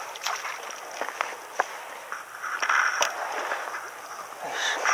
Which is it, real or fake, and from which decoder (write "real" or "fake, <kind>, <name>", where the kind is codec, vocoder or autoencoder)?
real